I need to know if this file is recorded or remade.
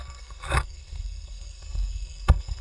remade